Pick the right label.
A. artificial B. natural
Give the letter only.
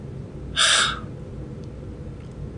A